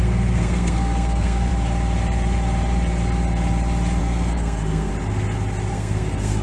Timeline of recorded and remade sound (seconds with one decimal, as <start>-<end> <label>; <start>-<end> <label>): 0.0-1.5 remade; 1.5-4.0 recorded; 4.0-4.9 remade; 4.9-5.7 recorded; 5.7-6.4 remade